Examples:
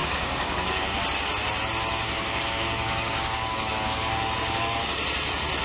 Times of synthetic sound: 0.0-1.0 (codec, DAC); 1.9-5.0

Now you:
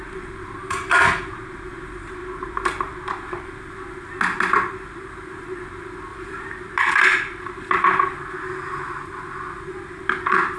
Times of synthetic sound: 2.2-3.6 (vocoder, BigVGAN v2); 6.1-6.9

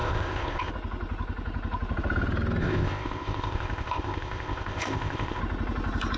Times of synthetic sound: 0.0-0.7 (codec, ZipCodec); 2.6-5.4

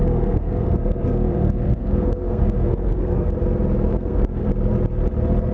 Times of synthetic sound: 0.0-3.3 (codec, SNAC); 3.9-4.5